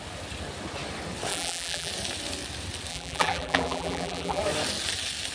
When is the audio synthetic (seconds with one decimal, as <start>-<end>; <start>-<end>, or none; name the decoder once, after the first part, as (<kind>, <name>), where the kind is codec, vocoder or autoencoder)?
1.3-1.9 (vocoder, BigVGAN v2); 2.9-4.4